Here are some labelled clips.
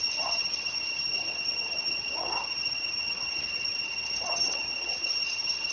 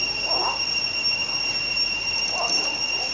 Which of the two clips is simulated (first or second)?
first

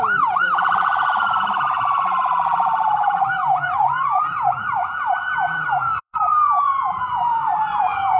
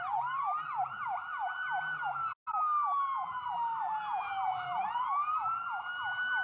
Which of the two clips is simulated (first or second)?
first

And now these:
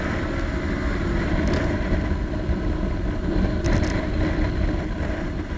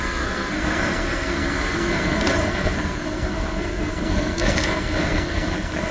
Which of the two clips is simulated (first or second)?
second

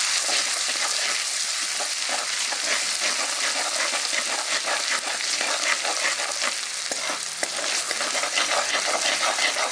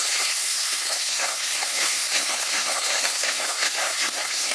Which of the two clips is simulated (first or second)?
second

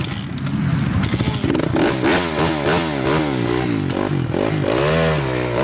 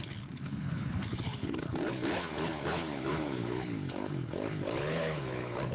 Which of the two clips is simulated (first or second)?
second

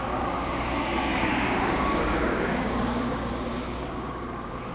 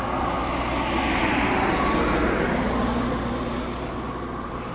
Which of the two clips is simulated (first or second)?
first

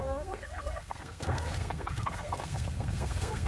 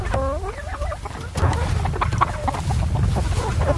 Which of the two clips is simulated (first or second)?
first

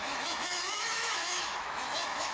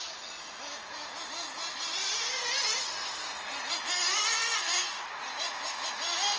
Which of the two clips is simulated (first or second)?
first